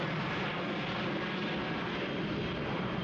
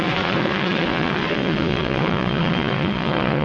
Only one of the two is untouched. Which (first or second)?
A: first